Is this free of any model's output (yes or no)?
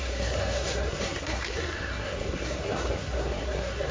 no